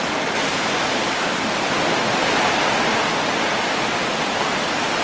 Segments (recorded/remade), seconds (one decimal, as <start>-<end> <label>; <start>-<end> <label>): 0.0-5.0 recorded